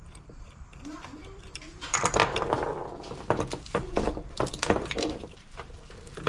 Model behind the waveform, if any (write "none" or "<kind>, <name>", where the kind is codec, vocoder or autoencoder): vocoder, BigVGAN v2